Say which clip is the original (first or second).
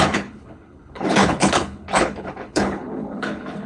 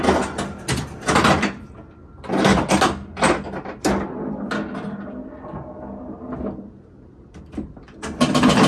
second